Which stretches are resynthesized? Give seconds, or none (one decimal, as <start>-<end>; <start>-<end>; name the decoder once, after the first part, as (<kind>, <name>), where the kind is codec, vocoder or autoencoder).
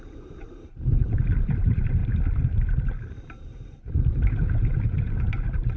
0.0-2.0 (vocoder, BigVGAN v2); 3.2-5.8